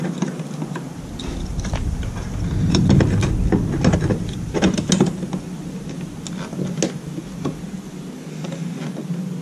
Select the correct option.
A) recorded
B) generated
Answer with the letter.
A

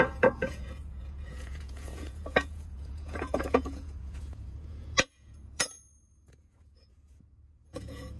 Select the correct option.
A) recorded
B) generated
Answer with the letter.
B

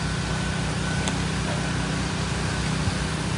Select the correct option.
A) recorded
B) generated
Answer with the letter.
A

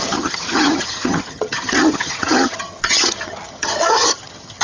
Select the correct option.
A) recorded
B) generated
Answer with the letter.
B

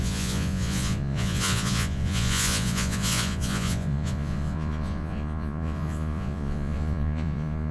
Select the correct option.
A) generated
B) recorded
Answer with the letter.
A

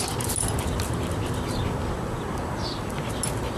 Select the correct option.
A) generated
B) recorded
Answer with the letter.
B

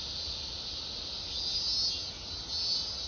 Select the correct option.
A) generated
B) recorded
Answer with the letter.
B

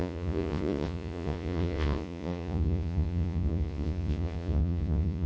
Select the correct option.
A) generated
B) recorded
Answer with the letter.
A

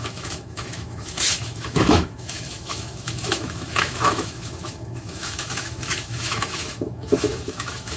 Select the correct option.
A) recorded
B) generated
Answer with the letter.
B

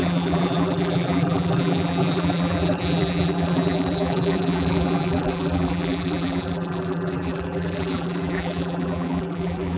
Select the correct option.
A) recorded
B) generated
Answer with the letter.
B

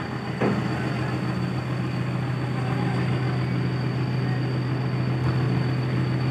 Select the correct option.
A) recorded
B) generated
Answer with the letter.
A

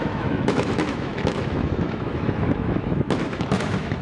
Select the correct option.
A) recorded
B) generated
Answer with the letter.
B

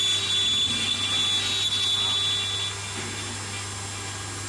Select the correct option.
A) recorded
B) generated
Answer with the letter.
A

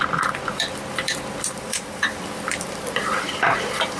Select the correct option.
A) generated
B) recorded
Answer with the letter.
A